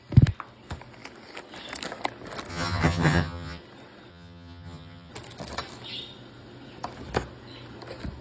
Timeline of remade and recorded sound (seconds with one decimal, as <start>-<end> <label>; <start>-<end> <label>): 0.0-2.5 recorded; 2.5-3.6 remade; 3.6-4.1 recorded; 4.1-5.1 remade; 5.1-8.2 recorded